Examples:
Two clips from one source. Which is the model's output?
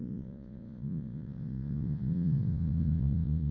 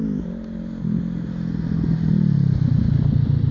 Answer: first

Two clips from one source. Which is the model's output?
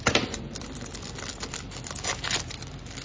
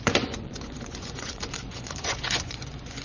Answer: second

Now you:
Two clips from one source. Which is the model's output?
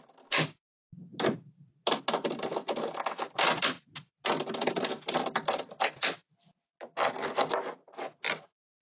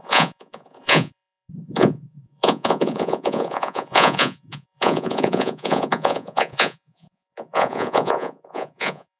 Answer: second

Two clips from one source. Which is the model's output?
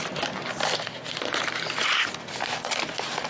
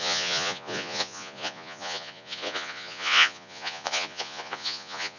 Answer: second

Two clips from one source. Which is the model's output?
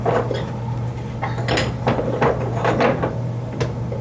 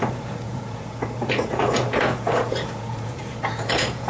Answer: second